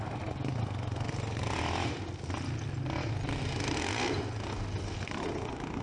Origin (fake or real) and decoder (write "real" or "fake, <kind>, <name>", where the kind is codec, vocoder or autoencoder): real